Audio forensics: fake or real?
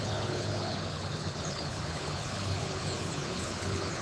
fake